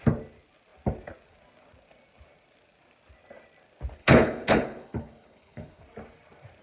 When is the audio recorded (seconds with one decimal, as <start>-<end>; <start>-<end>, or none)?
0.0-4.0; 5.8-6.6